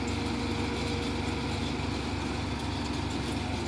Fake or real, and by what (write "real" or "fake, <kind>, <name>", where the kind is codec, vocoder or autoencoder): real